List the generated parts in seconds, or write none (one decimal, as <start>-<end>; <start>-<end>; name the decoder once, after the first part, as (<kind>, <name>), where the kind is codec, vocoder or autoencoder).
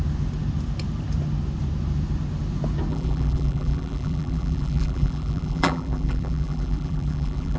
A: 2.9-7.6 (vocoder, BigVGAN v2)